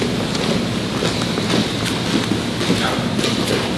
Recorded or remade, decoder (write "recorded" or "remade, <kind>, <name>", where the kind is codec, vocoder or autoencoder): recorded